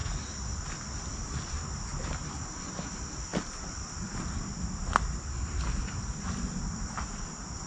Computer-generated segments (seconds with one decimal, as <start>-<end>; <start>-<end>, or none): none